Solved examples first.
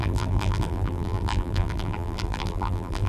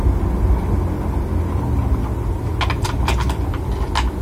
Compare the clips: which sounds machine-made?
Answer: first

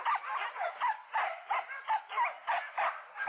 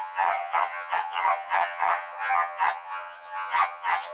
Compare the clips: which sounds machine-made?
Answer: second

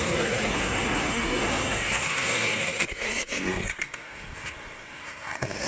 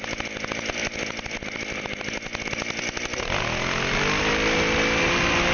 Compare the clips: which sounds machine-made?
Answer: first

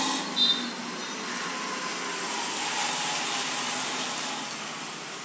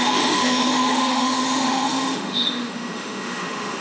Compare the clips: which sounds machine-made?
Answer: second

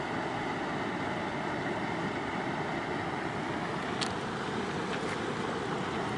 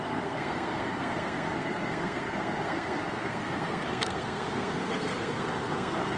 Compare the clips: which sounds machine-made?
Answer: second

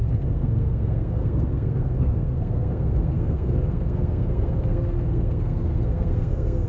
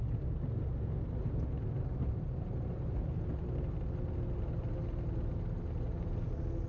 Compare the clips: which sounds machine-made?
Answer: first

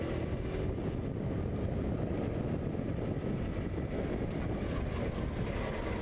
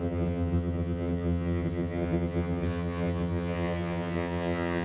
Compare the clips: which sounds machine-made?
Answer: second